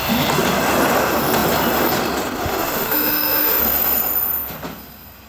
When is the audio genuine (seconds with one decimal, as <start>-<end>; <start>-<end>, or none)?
0.0-2.4; 3.6-5.3